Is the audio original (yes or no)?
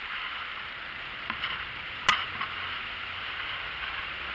yes